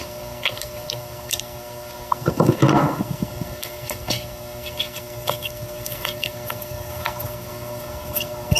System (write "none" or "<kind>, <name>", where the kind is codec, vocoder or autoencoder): codec, SNAC